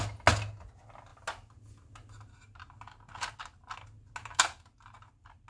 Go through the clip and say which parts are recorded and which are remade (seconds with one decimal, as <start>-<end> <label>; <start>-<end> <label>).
0.0-5.5 recorded